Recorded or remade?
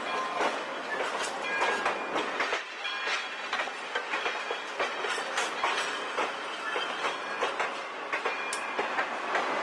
recorded